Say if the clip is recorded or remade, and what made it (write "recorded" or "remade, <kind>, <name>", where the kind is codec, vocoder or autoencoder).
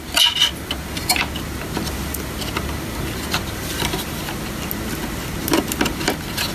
recorded